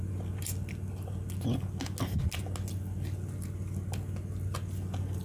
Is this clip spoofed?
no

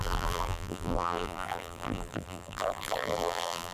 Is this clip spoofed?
yes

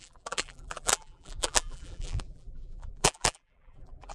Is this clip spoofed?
yes